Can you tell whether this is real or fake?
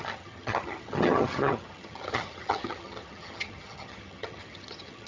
fake